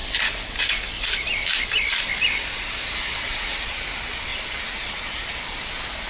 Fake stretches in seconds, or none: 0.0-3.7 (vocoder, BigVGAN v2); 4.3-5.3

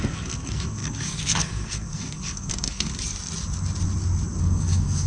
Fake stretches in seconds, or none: 0.0-2.9 (codec, SNAC); 4.4-5.1

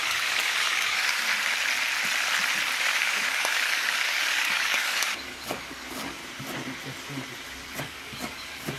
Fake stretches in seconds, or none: 0.0-1.3 (codec, DAC); 2.8-6.2; 7.8-8.8

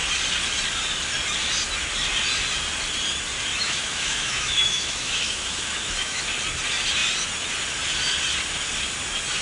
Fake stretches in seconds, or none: 3.5-6.2 (autoencoder, DAC-VAE)